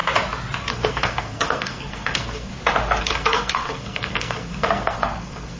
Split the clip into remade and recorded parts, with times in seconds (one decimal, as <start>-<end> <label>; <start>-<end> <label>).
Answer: 0.0-0.7 recorded; 0.7-2.5 remade; 2.5-3.0 recorded; 3.0-5.6 remade